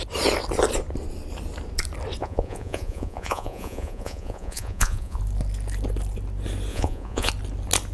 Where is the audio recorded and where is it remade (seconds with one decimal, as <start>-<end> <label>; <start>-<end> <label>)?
0.0-2.2 recorded; 2.2-5.2 remade; 5.2-6.7 recorded; 6.7-7.3 remade; 7.3-7.9 recorded